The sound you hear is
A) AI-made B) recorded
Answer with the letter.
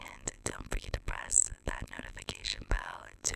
A